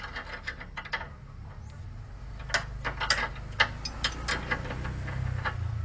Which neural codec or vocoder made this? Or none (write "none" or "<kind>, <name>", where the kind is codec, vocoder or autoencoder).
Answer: none